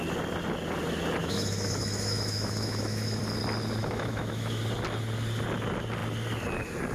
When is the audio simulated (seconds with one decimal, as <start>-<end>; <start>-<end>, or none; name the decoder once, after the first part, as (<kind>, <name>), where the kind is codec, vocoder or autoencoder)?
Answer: 1.2-3.2 (autoencoder, DAC-VAE); 3.8-4.6